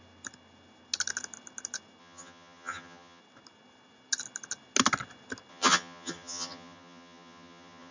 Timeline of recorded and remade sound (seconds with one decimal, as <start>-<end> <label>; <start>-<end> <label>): 0.0-2.0 recorded; 2.0-3.2 remade; 3.2-5.5 recorded; 5.5-7.9 remade